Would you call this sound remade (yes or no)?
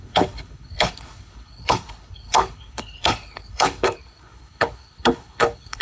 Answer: yes